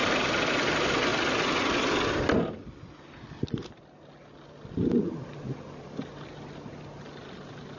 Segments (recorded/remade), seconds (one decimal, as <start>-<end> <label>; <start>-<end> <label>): 0.0-7.8 recorded